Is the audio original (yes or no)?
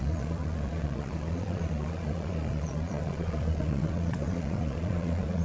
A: no